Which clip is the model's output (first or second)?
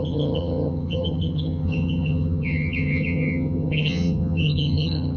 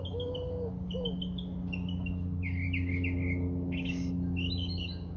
first